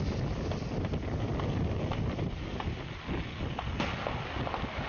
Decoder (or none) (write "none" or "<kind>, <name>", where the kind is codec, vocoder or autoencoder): none